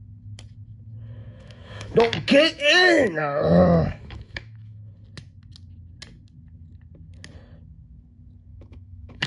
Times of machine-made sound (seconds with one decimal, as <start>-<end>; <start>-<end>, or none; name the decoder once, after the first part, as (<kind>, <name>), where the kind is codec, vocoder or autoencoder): 1.2-4.9 (autoencoder, DAC-VAE); 8.5-9.3